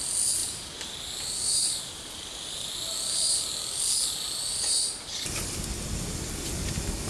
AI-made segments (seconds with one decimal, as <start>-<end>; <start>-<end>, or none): none